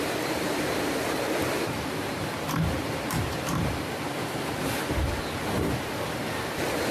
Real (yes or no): no